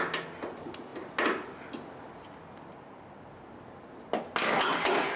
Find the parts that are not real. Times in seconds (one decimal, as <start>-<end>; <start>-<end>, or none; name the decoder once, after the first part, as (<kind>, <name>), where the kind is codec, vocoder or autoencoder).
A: none